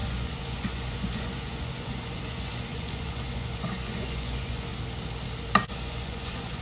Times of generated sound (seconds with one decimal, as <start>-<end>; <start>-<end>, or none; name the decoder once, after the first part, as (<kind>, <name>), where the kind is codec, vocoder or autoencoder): 0.0-4.7 (vocoder, Vocos); 5.7-6.6